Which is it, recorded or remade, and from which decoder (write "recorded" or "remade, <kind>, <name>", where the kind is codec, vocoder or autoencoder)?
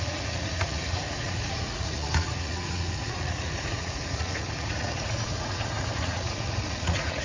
remade, vocoder, Vocos